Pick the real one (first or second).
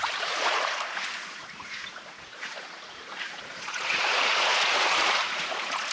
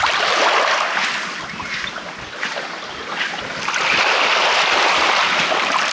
second